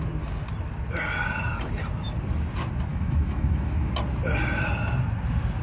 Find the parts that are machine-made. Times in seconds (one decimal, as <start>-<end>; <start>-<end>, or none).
2.9-3.9